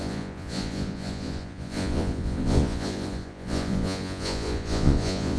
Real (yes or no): no